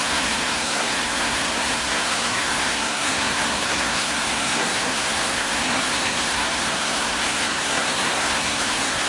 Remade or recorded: remade